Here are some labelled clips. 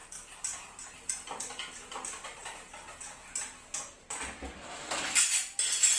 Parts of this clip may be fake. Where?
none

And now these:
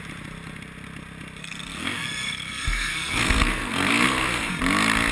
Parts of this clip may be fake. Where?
1.4-4.5 (codec, SNAC)

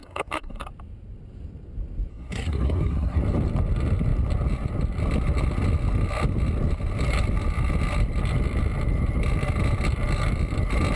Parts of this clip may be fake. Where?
0.0-0.7 (codec, SNAC); 2.1-3.2

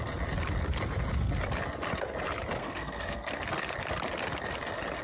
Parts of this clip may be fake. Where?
2.6-3.3 (codec, SNAC)

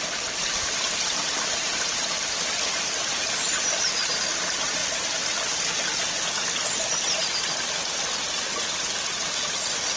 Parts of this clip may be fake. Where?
none